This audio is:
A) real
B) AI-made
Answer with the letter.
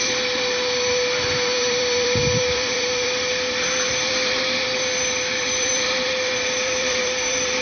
B